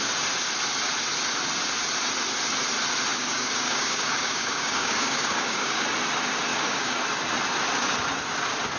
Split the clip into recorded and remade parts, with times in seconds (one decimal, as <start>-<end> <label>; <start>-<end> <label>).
0.0-3.1 recorded; 3.1-5.8 remade; 5.8-6.5 recorded; 6.5-7.0 remade; 7.0-8.8 recorded